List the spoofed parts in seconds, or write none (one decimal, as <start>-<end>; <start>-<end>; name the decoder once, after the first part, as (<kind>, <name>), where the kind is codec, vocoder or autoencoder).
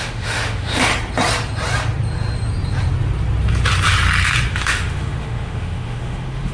0.0-0.9 (autoencoder, DAC-VAE); 4.5-6.5